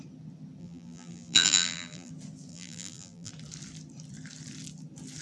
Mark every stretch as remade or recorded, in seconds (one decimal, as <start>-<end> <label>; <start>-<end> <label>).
0.0-0.6 recorded; 0.6-2.1 remade; 2.1-2.5 recorded; 2.5-3.3 remade; 3.3-5.2 recorded

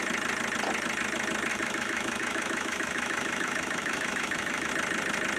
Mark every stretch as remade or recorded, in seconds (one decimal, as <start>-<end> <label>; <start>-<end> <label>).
0.0-1.5 recorded; 1.5-4.7 remade; 4.7-5.4 recorded